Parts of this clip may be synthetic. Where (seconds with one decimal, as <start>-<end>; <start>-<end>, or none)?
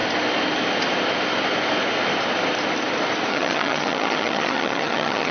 3.3-5.3